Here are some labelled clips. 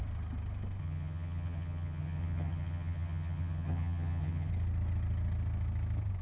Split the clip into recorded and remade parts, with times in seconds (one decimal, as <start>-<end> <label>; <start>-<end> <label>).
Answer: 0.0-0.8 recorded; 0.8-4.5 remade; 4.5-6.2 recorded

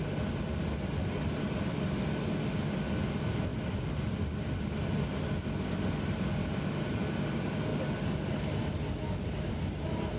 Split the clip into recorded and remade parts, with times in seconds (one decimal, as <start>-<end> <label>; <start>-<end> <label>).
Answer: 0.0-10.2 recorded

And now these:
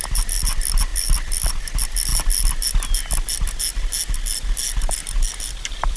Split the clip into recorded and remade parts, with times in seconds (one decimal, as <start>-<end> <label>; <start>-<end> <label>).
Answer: 0.0-6.0 recorded